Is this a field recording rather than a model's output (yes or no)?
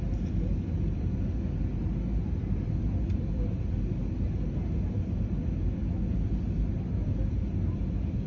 yes